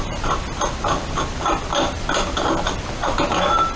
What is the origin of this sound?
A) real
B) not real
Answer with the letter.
A